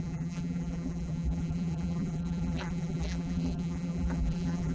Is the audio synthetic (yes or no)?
yes